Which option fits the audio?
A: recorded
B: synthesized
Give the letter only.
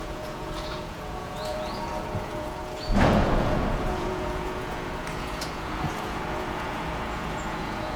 B